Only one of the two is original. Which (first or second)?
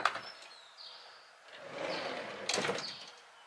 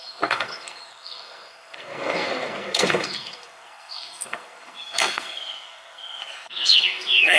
first